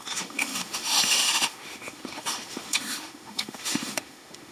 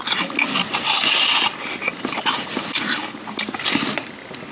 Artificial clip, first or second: first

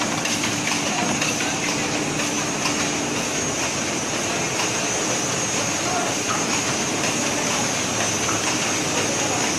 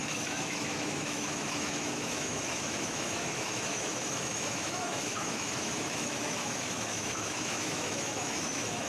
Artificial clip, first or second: second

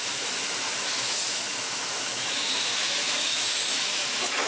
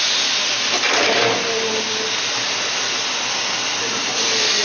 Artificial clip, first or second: first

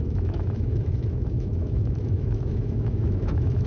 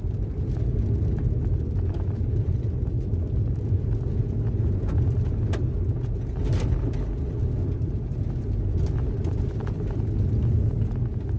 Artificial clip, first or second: first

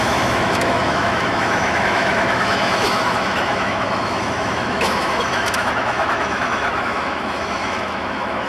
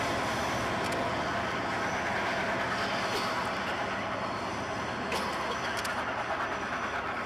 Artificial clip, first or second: first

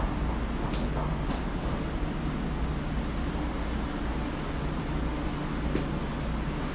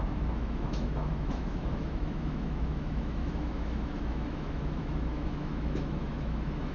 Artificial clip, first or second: second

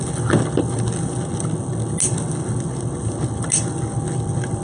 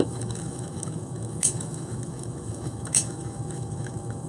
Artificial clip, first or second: second